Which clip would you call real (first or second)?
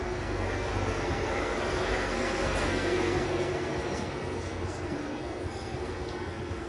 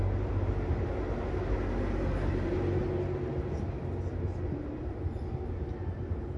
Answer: second